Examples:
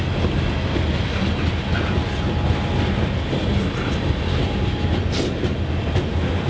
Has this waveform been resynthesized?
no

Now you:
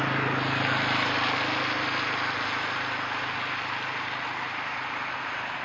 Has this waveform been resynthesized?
no